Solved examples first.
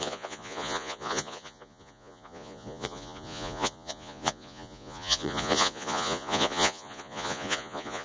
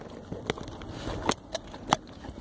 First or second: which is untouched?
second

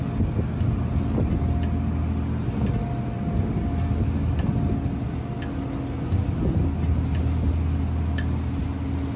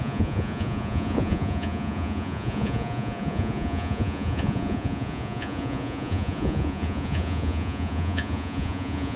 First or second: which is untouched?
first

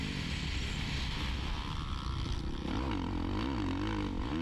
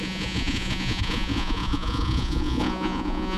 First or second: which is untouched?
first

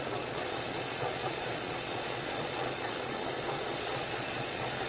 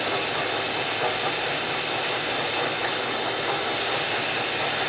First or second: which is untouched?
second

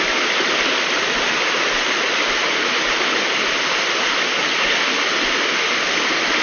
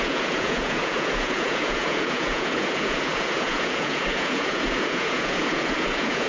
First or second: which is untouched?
first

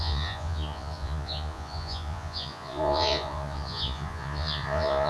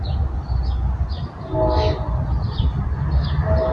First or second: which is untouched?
second